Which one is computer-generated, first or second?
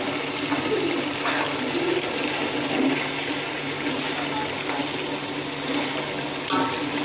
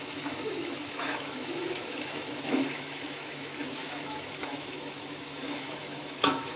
second